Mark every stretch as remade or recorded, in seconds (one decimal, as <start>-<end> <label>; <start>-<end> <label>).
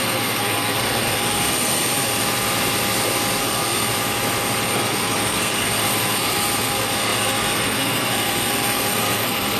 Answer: 0.0-2.1 remade; 2.1-3.4 recorded; 3.4-3.9 remade; 3.9-4.7 recorded; 4.7-9.6 remade